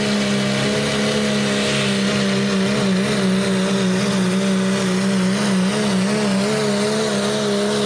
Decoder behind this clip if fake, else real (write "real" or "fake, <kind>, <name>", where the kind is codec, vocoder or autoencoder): real